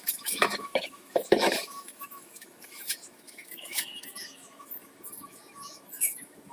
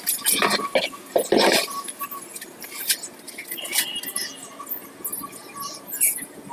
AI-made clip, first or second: first